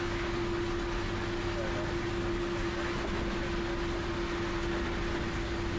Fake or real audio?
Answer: real